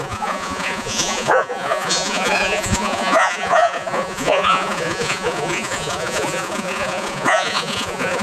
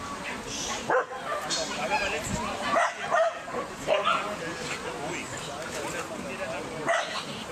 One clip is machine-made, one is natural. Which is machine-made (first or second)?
first